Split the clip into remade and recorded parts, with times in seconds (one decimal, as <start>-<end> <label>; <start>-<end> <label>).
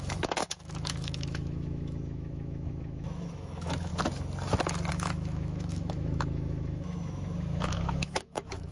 0.0-3.9 remade; 3.9-4.9 recorded; 4.9-8.7 remade